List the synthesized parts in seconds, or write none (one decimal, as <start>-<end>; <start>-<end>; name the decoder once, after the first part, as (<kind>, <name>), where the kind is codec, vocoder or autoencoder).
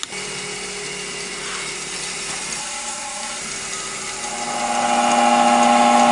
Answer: 2.6-3.4 (codec, SNAC)